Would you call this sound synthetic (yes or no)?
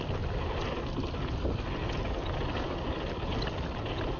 no